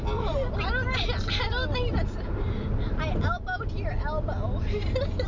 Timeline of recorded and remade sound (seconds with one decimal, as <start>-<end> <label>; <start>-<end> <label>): 0.0-5.3 recorded